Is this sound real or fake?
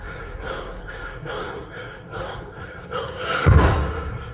fake